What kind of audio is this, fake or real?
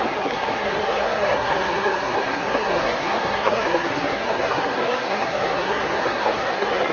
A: fake